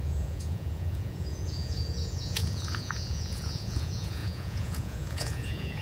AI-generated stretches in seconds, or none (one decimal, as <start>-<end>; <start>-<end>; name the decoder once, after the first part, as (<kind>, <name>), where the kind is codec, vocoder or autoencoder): 0.0-5.8 (vocoder, Vocos)